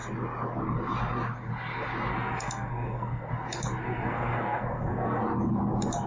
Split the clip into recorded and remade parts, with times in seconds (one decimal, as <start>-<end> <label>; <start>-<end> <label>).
0.0-2.1 recorded; 2.1-3.3 remade; 3.3-3.8 recorded; 3.8-5.2 remade; 5.2-6.1 recorded